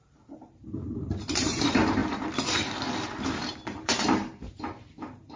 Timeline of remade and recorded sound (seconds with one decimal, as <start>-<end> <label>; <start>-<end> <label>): 0.0-5.4 remade

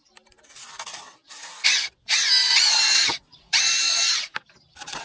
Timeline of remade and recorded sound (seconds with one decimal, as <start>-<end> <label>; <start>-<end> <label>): 0.0-2.7 recorded; 2.7-4.3 remade; 4.3-5.0 recorded

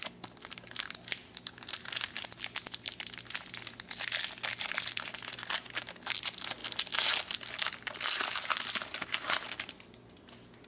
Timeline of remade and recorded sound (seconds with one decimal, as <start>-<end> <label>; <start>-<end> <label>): 0.0-10.7 recorded

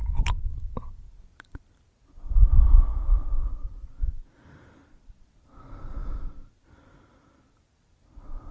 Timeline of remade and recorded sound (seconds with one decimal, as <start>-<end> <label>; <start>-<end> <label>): 0.0-6.0 remade; 6.0-6.5 recorded; 6.5-8.5 remade

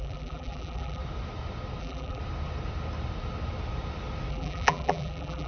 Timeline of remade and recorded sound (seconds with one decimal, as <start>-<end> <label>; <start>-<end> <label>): 0.0-1.0 remade; 1.0-1.8 recorded; 1.8-2.2 remade; 2.2-4.3 recorded; 4.3-5.5 remade

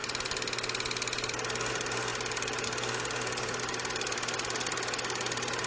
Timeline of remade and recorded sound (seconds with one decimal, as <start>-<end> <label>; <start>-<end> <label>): 0.0-1.7 recorded; 1.7-5.7 remade

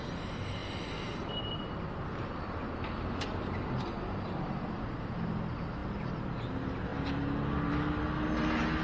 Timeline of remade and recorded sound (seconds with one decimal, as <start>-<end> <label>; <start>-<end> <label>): 0.0-8.8 recorded

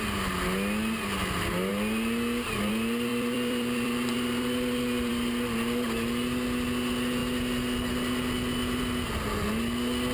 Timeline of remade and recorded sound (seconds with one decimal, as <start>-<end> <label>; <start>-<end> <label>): 0.0-3.1 recorded; 3.1-5.1 remade; 5.1-10.1 recorded